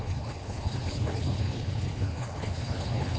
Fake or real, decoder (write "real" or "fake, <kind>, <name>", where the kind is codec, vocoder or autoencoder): fake, codec, HILCodec